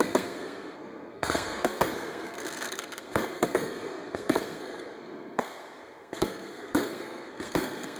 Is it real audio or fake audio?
fake